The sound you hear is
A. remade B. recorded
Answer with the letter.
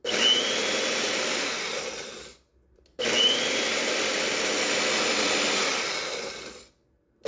B